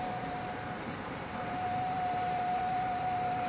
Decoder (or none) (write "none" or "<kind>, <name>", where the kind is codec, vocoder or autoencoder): vocoder, BigVGAN v2